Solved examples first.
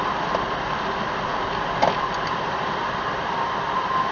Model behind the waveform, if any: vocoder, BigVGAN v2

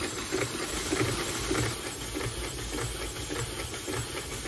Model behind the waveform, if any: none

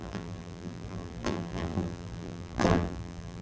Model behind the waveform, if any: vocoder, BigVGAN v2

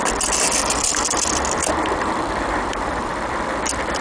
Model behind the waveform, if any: vocoder, BigVGAN v2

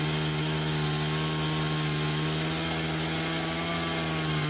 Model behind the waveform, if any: none